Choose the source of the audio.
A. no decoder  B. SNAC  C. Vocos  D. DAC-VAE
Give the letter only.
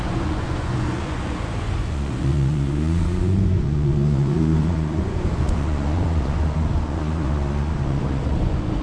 C